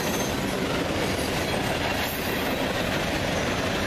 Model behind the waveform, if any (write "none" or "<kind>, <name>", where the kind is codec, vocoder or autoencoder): none